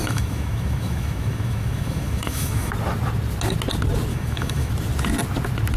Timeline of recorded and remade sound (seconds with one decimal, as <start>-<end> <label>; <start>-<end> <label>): 0.0-2.7 remade; 2.7-4.1 recorded; 4.1-4.7 remade; 4.7-5.8 recorded